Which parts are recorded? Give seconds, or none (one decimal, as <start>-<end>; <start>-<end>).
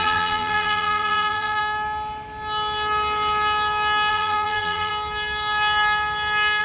1.6-4.1; 4.9-6.6